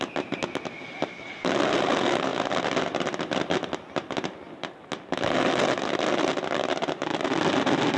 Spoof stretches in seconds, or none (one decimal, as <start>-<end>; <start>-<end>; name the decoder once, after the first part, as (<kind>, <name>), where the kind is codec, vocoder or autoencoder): none